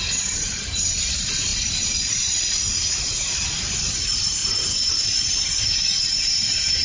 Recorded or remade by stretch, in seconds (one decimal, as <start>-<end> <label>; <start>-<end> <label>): 0.0-1.5 recorded; 1.5-2.4 remade; 2.4-6.8 recorded